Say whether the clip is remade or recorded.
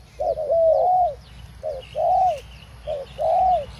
recorded